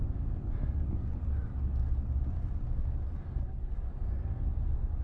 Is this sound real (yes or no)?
yes